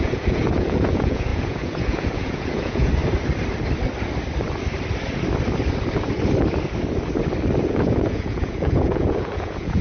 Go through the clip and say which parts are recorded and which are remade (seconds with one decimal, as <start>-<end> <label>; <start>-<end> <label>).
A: 0.0-3.0 remade; 3.0-7.6 recorded; 7.6-9.8 remade